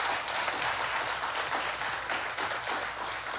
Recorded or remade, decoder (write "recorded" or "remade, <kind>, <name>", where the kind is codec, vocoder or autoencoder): recorded